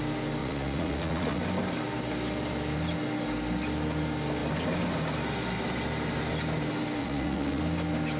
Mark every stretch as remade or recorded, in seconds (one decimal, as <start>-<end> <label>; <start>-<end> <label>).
0.0-0.4 recorded; 0.4-1.4 remade; 1.4-7.0 recorded; 7.0-7.6 remade; 7.6-8.2 recorded

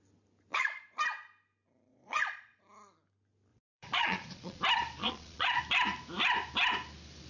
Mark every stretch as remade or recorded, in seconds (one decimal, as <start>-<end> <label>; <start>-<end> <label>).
0.0-0.5 recorded; 0.5-1.0 remade; 1.0-1.9 recorded; 1.9-2.6 remade; 2.6-3.5 recorded; 3.5-4.6 remade; 4.6-5.0 recorded; 5.0-5.6 remade; 5.6-7.3 recorded

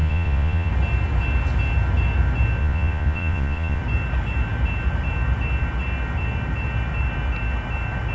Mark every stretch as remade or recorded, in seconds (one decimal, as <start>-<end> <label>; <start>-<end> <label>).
0.0-0.7 remade; 0.7-2.6 recorded; 2.6-3.8 remade; 3.8-8.1 recorded